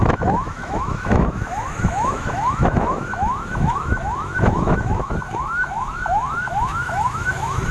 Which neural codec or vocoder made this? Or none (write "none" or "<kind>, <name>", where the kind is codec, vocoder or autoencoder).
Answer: autoencoder, DAC-VAE